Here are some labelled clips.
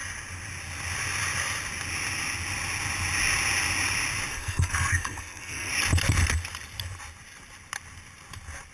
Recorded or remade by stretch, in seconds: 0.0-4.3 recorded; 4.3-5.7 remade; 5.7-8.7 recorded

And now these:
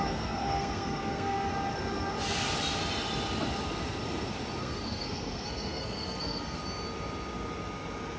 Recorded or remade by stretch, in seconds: 0.0-1.5 remade; 1.5-4.6 recorded; 4.6-6.6 remade; 6.6-8.2 recorded

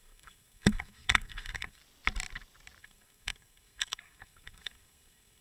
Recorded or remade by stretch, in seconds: 0.0-1.8 remade; 1.8-2.8 recorded; 2.8-5.4 remade

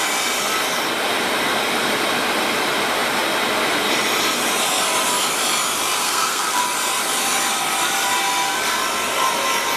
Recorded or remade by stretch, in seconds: 0.0-6.0 recorded; 6.0-6.6 remade; 6.6-9.8 recorded

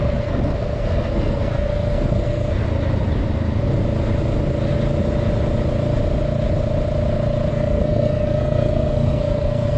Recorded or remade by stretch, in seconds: 0.0-2.6 remade; 2.6-7.5 recorded; 7.5-9.8 remade

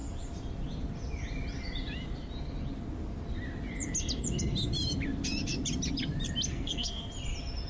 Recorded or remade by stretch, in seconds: 0.0-6.5 recorded; 6.5-7.1 remade; 7.1-7.7 recorded

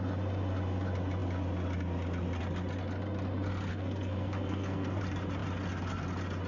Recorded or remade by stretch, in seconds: 0.0-3.7 recorded; 3.7-5.0 remade; 5.0-6.5 recorded